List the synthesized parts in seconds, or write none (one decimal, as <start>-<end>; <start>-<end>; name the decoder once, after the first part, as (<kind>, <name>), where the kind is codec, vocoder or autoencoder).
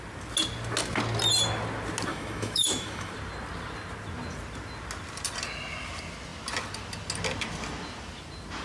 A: 2.1-3.1 (autoencoder, DAC-VAE)